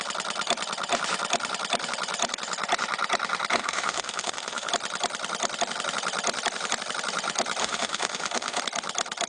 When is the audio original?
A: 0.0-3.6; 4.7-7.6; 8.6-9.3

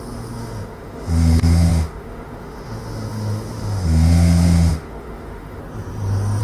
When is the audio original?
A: 5.6-6.4

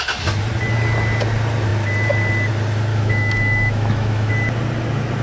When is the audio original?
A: 0.0-2.9; 4.3-5.2

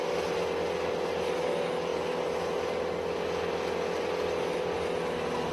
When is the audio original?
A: 0.0-5.5

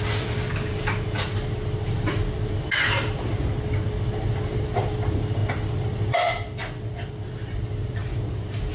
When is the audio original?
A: 0.0-8.7

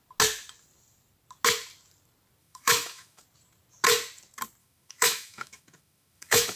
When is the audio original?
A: 0.0-2.4; 3.2-4.6

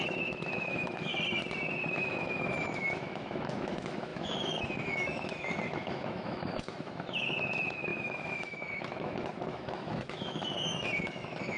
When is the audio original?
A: 1.1-1.9

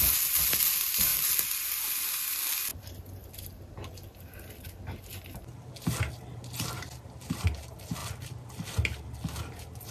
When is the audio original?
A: 0.0-9.9